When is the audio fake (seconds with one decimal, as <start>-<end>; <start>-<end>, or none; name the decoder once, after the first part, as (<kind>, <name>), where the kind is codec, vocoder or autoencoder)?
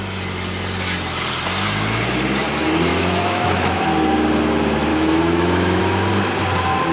2.9-3.8 (autoencoder, DAC-VAE); 4.9-5.8